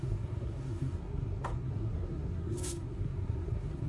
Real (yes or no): no